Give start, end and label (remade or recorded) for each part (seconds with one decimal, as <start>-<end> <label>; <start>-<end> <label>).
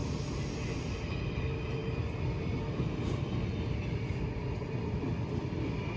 0.0-6.0 recorded